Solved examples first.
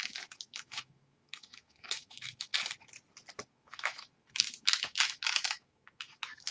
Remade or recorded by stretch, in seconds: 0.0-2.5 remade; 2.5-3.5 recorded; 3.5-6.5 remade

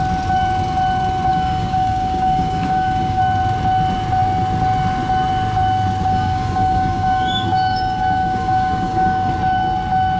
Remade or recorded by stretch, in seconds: 0.0-1.3 recorded; 1.3-3.2 remade; 3.2-6.1 recorded; 6.1-9.3 remade; 9.3-10.2 recorded

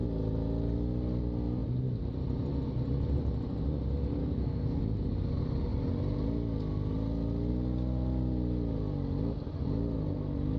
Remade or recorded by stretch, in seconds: 0.0-4.2 recorded; 4.2-4.8 remade; 4.8-10.6 recorded

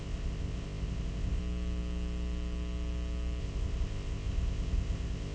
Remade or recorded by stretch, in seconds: 0.0-1.4 remade; 1.4-3.4 recorded; 3.4-5.3 remade

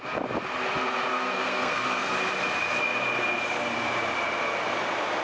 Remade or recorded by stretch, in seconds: 0.0-1.1 recorded; 1.1-2.1 remade; 2.1-5.2 recorded

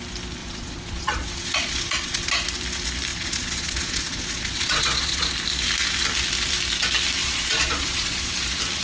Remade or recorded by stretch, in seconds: 0.0-0.4 recorded; 0.4-2.3 remade; 2.3-3.1 recorded; 3.1-5.3 remade; 5.3-7.2 recorded; 7.2-8.3 remade; 8.3-8.8 recorded